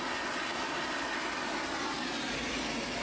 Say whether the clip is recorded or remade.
recorded